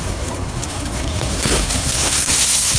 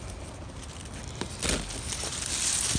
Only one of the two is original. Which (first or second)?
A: second